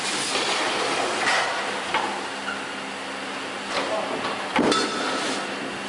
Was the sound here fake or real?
real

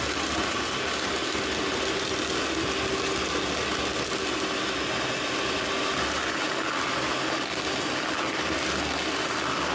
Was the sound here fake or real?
real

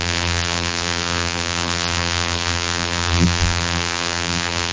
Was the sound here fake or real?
fake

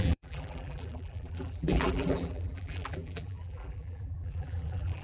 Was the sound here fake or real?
fake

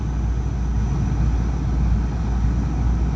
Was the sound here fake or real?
real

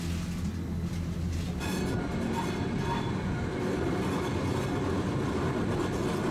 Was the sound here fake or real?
real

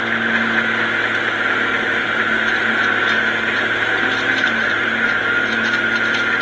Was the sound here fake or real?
real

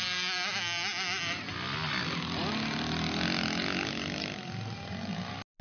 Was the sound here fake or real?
real